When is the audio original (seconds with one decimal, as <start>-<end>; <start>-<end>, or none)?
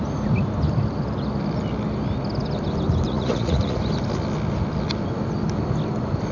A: 0.0-3.1; 3.8-6.3